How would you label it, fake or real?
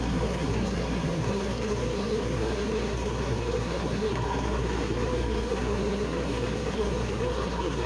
fake